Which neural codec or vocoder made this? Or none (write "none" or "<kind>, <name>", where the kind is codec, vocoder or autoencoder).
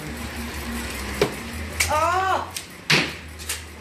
none